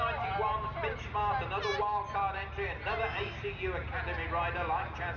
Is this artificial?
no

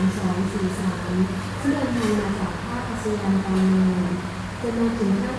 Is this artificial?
no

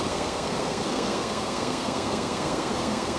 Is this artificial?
yes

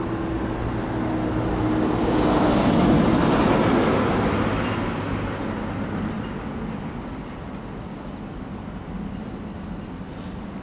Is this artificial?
no